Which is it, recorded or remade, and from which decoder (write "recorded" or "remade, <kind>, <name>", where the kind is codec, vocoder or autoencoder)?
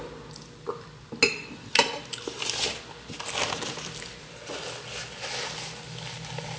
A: recorded